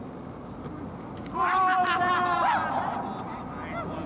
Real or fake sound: real